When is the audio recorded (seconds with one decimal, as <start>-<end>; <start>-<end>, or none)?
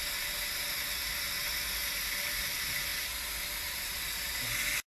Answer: 0.0-5.0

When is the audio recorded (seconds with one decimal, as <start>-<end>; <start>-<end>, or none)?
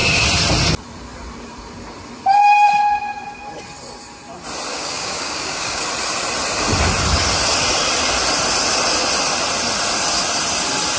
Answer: 0.0-4.7; 5.8-11.0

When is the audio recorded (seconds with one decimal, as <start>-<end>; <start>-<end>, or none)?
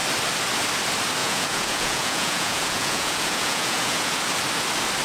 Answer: 0.0-1.2; 4.2-5.0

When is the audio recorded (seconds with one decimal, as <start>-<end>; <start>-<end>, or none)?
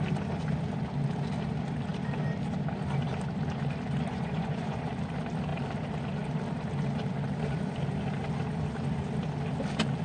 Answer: 0.0-4.1; 4.9-10.0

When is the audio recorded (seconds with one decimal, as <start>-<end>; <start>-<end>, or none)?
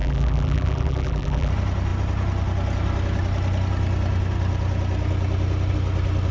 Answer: 1.5-6.3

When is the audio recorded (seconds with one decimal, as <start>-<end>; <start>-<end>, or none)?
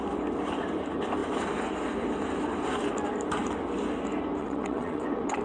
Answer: 0.0-4.4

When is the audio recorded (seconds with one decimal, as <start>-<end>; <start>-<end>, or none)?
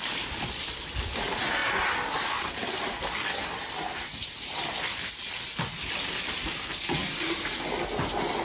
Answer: 0.0-8.4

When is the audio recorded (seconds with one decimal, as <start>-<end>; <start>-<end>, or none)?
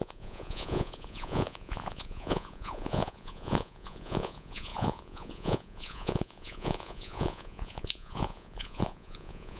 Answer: none